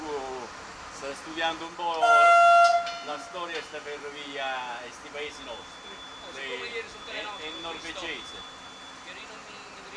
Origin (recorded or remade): recorded